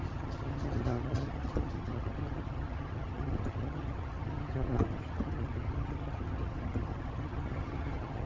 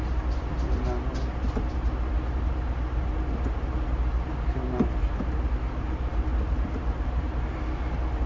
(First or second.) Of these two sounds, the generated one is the first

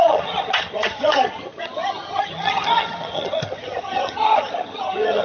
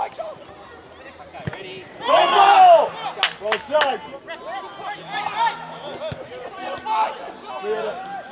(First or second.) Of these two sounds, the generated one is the first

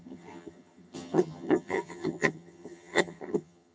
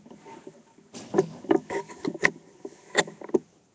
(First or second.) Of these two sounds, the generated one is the first